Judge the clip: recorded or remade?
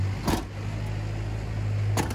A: recorded